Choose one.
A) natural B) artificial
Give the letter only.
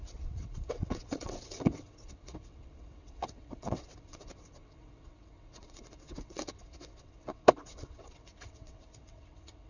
B